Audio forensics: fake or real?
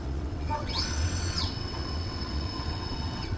fake